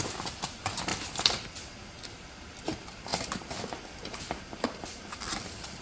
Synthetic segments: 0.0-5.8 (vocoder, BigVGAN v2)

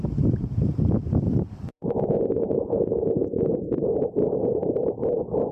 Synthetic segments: 1.7-3.5 (vocoder, Vocos)

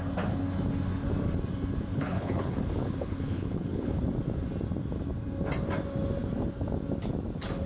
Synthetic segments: 1.9-4.0 (codec, HILCodec)

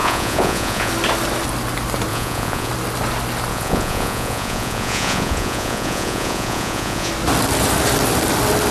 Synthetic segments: 0.0-0.9 (vocoder, Vocos); 2.1-2.7; 3.5-7.1

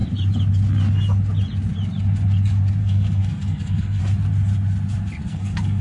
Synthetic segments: 2.8-4.0 (codec, SNAC); 5.2-5.8

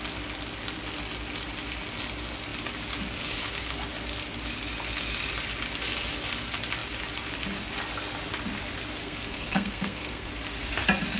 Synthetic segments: 9.0-10.3 (codec, SNAC)

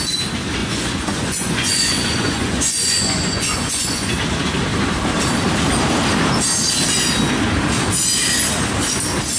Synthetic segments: 0.6-4.1 (vocoder, Vocos)

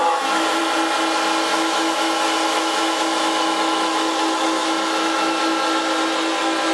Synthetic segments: 0.0-0.6 (autoencoder, DAC-VAE); 1.5-5.4